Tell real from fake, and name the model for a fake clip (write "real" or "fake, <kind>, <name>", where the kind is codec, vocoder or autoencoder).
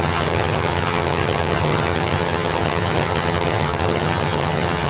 fake, vocoder, HiFi-GAN